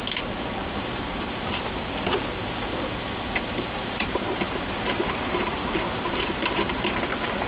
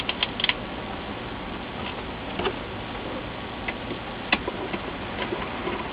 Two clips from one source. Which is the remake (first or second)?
first